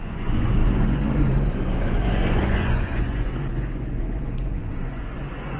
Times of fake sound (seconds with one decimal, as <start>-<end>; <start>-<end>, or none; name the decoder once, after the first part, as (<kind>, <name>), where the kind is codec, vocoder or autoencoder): 0.0-5.6 (vocoder, Vocos)